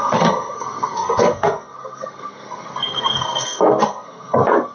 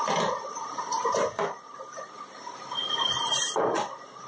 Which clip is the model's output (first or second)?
first